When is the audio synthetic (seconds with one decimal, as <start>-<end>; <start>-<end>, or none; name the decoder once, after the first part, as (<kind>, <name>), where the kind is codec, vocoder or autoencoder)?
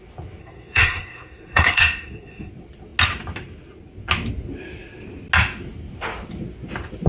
0.4-2.5 (codec, SNAC)